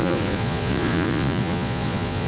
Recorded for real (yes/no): no